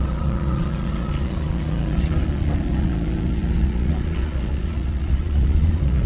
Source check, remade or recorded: remade